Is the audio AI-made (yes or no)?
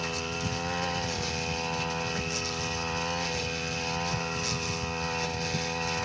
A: no